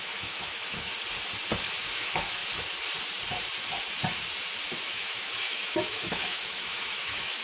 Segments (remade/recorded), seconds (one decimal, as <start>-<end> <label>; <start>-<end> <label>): 0.0-0.9 remade; 0.9-1.8 recorded; 1.8-2.4 remade; 2.4-4.8 recorded; 4.8-7.4 remade